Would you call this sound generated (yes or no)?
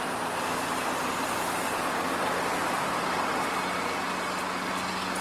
no